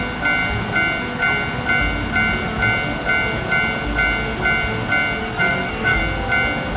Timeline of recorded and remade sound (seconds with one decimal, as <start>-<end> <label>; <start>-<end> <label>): 0.0-5.2 recorded; 5.2-6.0 remade; 6.0-6.8 recorded